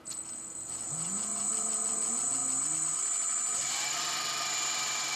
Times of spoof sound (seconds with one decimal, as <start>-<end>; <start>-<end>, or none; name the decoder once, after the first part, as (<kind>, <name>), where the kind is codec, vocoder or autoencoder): 0.0-2.4 (vocoder, Vocos)